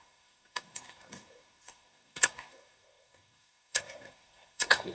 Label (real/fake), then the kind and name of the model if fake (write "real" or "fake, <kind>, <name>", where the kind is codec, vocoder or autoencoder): fake, codec, SNAC